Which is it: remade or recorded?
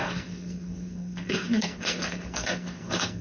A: remade